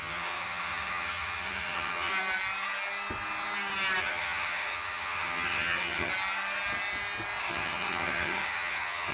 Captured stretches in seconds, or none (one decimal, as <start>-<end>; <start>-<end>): 2.1-4.0; 6.1-7.4